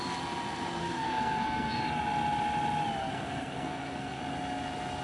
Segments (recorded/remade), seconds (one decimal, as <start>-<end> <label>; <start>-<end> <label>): 0.0-0.8 recorded; 0.8-1.8 remade; 1.8-3.0 recorded; 3.0-4.2 remade; 4.2-5.0 recorded